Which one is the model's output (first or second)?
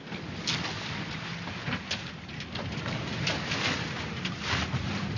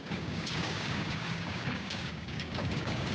second